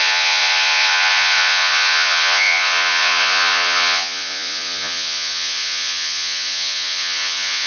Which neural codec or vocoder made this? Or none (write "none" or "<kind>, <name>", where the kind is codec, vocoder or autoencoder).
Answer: vocoder, Vocos